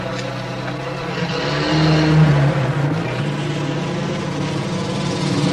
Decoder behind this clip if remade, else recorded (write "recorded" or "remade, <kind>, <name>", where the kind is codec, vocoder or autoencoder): recorded